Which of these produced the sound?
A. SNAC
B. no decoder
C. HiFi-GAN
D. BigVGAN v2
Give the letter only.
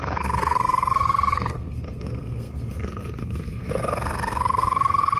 A